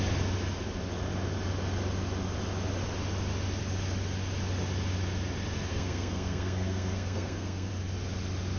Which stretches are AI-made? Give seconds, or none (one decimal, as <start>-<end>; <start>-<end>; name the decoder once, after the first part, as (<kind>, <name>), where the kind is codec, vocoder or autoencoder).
5.7-7.7 (codec, SNAC)